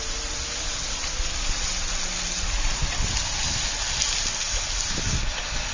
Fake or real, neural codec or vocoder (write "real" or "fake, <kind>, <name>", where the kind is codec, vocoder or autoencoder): real